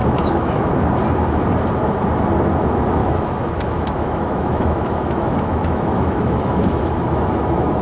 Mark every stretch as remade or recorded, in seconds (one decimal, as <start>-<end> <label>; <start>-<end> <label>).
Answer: 0.0-0.6 remade; 0.6-3.0 recorded; 3.0-7.8 remade